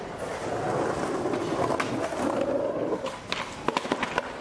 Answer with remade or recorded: recorded